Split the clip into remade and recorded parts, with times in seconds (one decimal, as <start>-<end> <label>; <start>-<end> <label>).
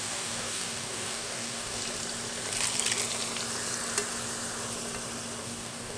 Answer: 0.0-1.8 remade; 1.8-5.4 recorded; 5.4-6.0 remade